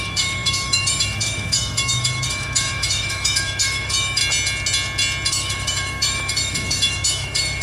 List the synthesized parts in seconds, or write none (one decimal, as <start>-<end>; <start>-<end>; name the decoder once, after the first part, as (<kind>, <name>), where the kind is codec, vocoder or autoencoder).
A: 0.0-4.2 (autoencoder, DAC-VAE); 5.3-7.6